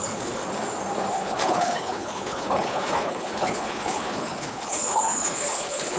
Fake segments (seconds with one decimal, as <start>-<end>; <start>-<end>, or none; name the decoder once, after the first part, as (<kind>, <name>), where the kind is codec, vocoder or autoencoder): 0.0-0.4 (codec, HILCodec); 1.1-6.0